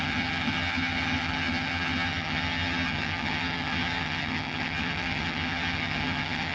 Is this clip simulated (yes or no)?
yes